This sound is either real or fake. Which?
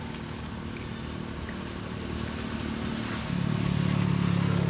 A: real